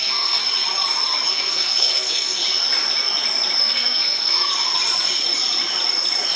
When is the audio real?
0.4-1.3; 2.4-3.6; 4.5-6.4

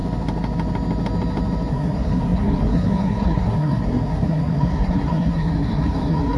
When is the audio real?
0.0-1.7